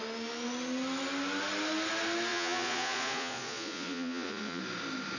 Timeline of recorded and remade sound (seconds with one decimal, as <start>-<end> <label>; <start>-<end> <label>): 0.0-2.3 recorded; 2.3-4.6 remade; 4.6-5.2 recorded

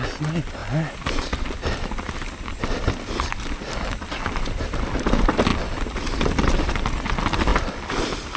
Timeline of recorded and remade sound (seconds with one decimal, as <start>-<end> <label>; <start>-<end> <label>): 0.0-8.4 recorded

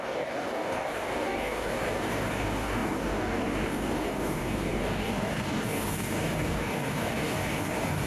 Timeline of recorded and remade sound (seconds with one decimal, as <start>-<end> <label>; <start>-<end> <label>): 0.0-8.1 remade